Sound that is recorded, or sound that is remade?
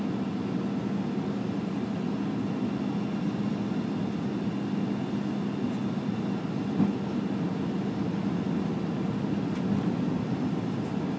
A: recorded